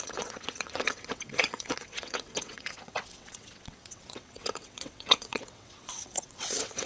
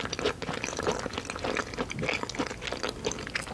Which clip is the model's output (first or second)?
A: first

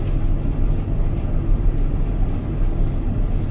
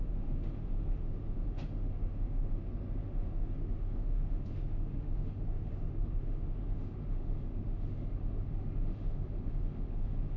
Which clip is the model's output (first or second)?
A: second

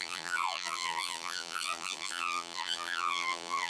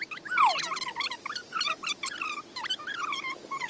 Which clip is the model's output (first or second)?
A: first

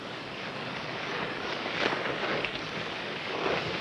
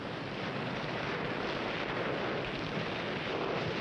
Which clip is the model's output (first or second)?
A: first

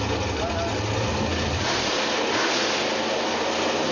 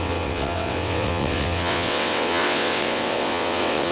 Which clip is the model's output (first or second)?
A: second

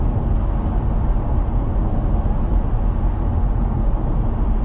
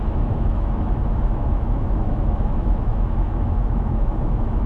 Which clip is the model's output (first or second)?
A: second